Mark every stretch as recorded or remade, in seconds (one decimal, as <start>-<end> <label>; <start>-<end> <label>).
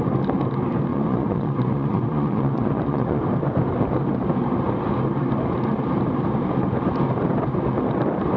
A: 0.0-0.9 recorded; 0.9-3.2 remade; 3.2-8.4 recorded